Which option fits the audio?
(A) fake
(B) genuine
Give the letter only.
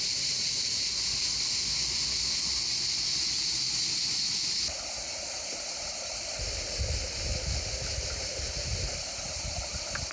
B